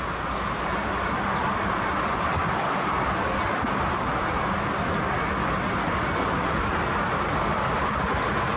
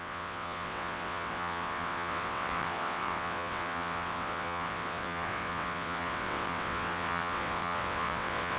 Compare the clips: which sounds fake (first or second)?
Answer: second